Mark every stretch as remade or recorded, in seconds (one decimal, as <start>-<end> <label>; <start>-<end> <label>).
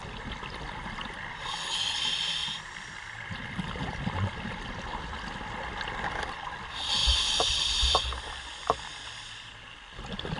0.0-2.4 recorded; 2.4-5.4 remade; 5.4-7.0 recorded; 7.0-8.0 remade; 8.0-10.4 recorded